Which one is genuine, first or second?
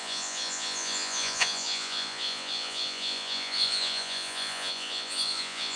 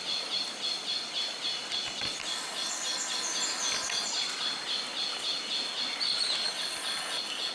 second